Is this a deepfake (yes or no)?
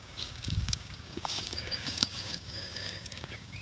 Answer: yes